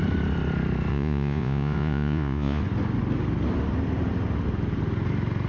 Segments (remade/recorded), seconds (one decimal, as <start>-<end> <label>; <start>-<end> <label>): 0.0-0.9 recorded; 0.9-2.6 remade; 2.6-5.5 recorded

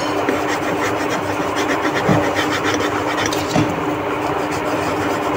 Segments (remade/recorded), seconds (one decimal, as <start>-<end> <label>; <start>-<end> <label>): 0.0-5.4 recorded

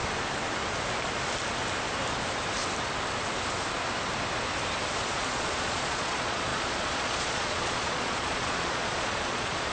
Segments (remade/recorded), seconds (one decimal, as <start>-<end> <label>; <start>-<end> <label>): 0.0-5.0 recorded; 5.0-9.7 remade